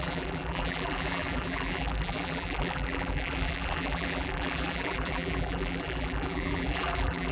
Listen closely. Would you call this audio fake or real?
fake